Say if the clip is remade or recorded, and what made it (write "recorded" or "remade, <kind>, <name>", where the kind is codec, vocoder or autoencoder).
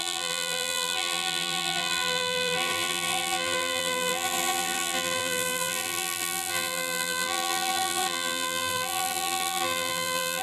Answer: remade, vocoder, BigVGAN v2